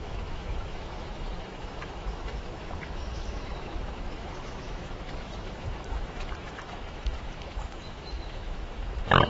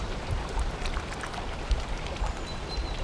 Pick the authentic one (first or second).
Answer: second